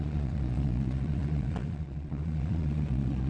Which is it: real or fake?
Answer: fake